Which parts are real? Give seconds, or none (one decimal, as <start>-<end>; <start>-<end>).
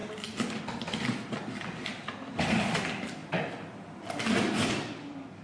0.0-5.4